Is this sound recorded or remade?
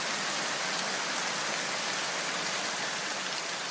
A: recorded